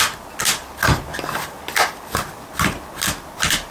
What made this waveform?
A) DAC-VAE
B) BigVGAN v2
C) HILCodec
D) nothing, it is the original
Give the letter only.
D